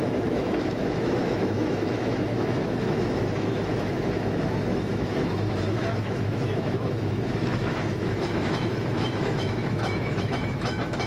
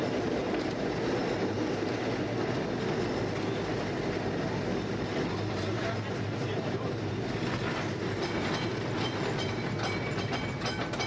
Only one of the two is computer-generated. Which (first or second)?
first